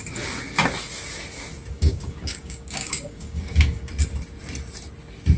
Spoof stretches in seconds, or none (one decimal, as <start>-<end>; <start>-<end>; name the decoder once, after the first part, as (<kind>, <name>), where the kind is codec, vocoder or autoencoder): 1.7-3.9 (codec, DAC)